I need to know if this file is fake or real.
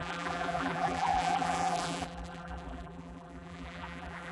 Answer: fake